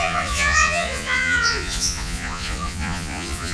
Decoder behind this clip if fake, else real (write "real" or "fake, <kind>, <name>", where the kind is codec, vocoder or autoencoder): fake, vocoder, Vocos